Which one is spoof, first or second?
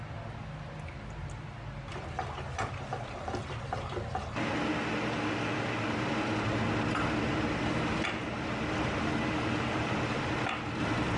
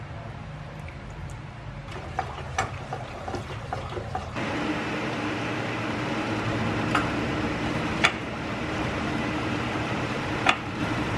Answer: second